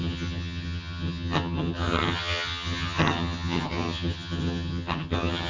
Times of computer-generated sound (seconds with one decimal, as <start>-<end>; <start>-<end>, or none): 0.0-5.5